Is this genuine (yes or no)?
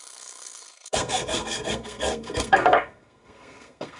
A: no